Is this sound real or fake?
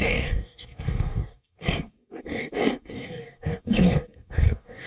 fake